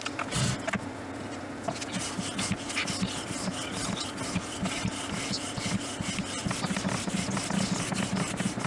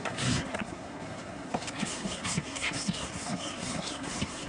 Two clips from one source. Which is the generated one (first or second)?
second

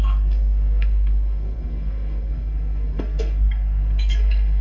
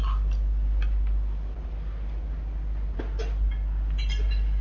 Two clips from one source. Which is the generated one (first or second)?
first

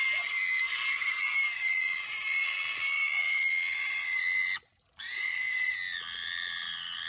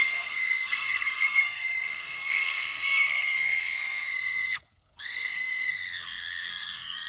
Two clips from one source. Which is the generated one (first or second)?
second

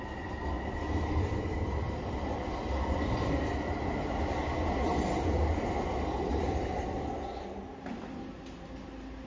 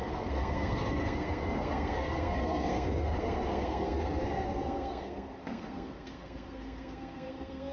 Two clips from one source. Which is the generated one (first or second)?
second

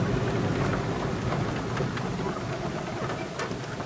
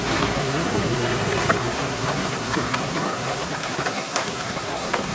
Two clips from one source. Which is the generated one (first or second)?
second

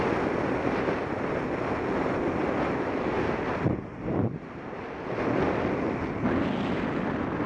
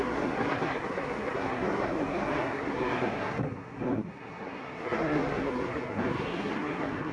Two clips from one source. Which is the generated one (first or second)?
second